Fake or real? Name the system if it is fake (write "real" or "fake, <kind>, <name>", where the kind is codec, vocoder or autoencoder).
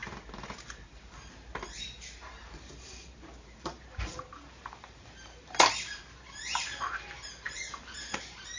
fake, vocoder, BigVGAN v2